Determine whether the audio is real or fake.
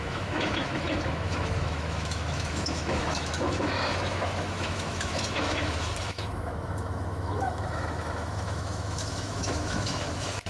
fake